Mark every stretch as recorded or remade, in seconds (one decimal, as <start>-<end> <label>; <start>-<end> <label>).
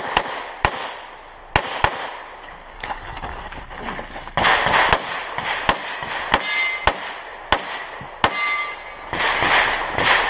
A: 0.0-2.6 recorded; 2.6-3.6 remade; 3.6-10.3 recorded